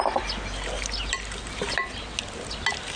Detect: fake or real real